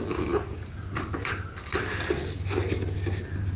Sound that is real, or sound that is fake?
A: real